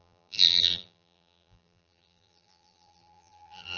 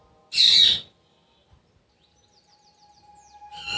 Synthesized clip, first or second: first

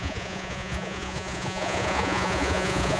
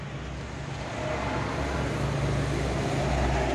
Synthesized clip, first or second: first